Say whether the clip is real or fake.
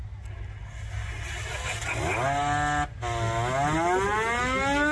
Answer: real